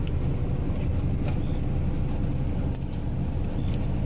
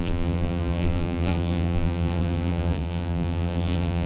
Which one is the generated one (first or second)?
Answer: second